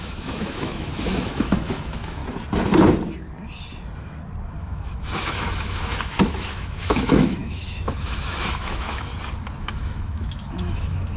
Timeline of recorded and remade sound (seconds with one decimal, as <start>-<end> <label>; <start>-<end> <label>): 0.0-2.2 remade; 2.2-4.6 recorded; 4.6-9.1 remade; 9.1-9.6 recorded; 9.6-11.2 remade